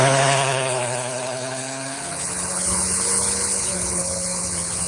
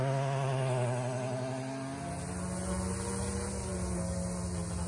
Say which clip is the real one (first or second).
second